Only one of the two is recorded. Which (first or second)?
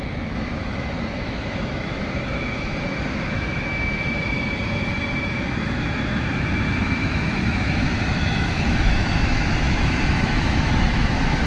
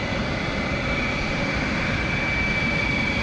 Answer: second